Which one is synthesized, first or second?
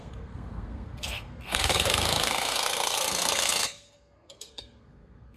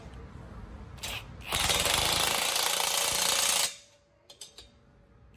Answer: first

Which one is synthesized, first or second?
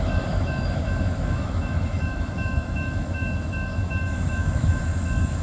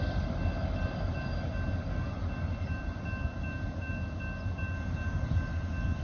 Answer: first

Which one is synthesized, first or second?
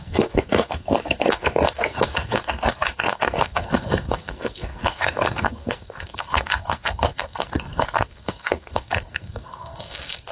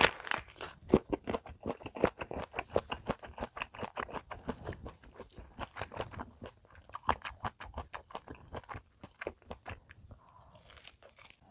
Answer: first